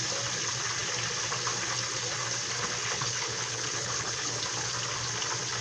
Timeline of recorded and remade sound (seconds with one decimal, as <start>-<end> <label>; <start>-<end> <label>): 0.0-2.8 recorded; 2.8-4.4 remade; 4.4-5.6 recorded